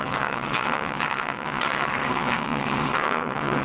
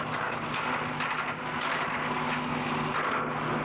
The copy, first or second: first